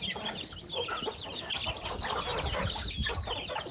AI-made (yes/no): no